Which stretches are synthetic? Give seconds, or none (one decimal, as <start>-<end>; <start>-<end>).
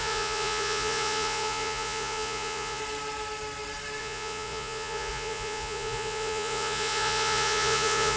0.0-2.8; 4.0-8.2